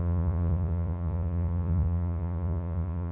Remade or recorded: remade